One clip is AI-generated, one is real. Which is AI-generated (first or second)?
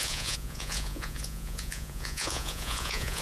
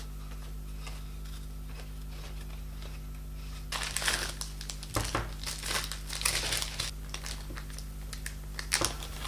first